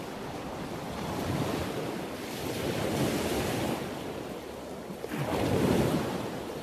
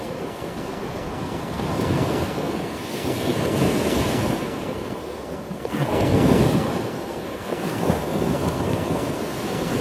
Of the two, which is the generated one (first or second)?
second